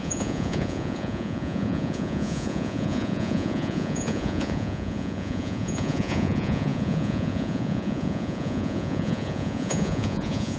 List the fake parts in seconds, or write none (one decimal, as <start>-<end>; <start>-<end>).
0.0-10.6